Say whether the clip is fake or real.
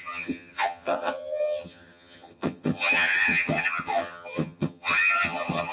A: fake